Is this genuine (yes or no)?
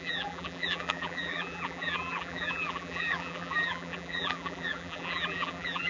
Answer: no